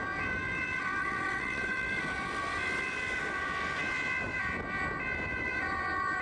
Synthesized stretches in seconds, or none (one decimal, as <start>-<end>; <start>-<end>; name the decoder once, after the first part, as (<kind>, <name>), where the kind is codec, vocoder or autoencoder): 1.0-1.9 (vocoder, WaveNeXt)